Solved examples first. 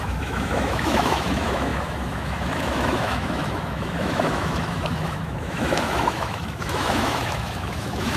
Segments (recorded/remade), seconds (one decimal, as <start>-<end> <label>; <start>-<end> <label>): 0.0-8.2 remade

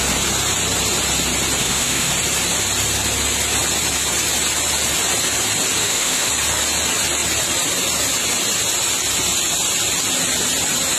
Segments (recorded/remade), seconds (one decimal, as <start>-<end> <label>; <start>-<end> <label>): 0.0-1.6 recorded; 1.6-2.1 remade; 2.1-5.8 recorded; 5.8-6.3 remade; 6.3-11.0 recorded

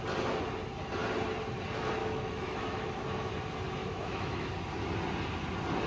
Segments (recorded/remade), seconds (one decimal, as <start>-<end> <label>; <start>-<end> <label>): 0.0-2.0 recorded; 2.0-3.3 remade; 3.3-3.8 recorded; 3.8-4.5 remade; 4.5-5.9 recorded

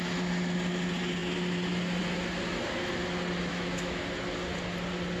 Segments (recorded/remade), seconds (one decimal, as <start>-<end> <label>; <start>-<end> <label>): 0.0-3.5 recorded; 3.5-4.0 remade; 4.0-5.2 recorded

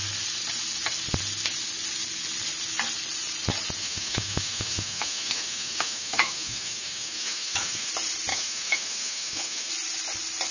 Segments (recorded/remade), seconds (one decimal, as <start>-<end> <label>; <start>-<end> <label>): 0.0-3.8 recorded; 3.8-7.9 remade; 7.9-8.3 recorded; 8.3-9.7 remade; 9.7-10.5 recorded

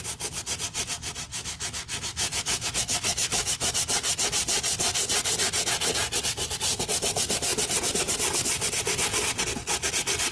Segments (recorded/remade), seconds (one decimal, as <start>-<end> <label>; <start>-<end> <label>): 0.0-1.3 recorded; 1.3-3.7 remade; 3.7-10.3 recorded